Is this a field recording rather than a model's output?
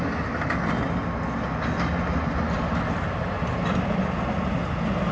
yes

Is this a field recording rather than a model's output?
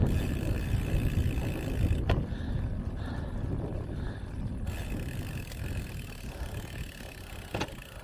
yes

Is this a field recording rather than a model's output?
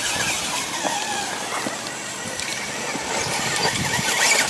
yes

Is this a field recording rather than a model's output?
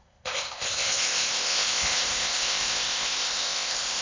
no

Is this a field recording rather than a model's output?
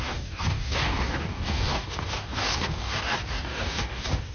no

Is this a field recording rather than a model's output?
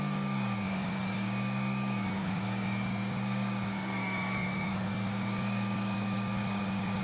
no